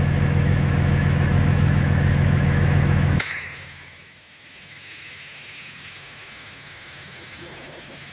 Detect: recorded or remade remade